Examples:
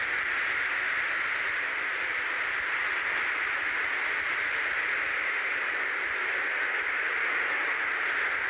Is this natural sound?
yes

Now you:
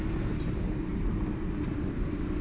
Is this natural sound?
no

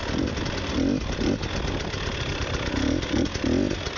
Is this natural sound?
yes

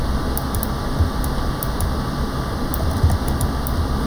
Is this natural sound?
yes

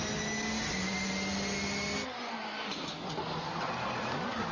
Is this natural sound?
yes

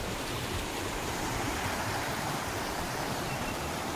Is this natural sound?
no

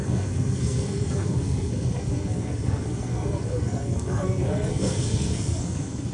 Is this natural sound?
no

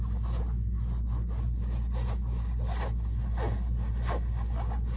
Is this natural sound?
yes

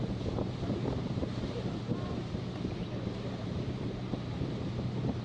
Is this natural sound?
no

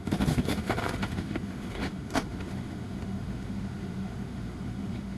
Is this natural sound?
no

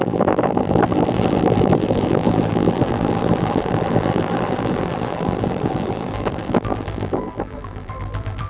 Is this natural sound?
no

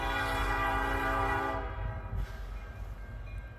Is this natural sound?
yes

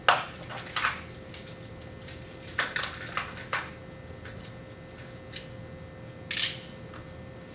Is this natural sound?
yes